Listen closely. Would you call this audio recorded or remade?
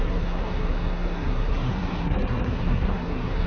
remade